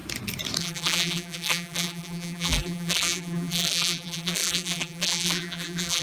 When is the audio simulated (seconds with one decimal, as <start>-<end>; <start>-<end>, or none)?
0.6-6.0